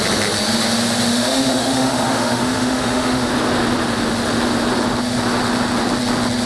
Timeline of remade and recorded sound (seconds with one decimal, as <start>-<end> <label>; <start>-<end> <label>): 0.0-1.1 recorded; 1.1-3.3 remade; 3.3-6.5 recorded